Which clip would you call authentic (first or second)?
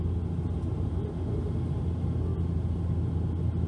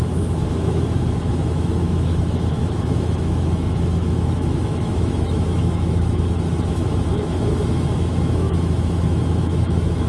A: first